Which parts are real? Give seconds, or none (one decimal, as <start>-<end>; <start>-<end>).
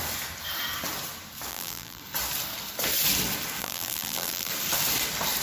0.0-1.5; 2.0-3.6; 4.5-5.4